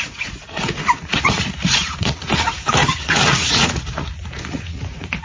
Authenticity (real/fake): fake